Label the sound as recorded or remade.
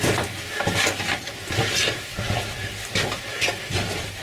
recorded